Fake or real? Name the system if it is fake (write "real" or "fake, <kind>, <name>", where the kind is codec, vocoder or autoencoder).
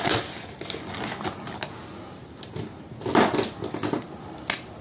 real